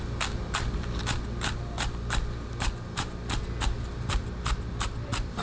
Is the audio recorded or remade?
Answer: recorded